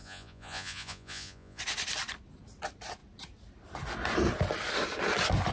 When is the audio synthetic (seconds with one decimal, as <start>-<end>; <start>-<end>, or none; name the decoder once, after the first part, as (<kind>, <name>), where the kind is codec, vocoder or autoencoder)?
0.0-1.6 (vocoder, Vocos)